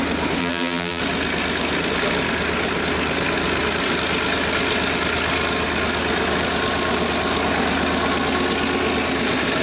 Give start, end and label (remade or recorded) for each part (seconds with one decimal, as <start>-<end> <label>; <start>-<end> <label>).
0.0-0.4 recorded; 0.4-1.0 remade; 1.0-9.6 recorded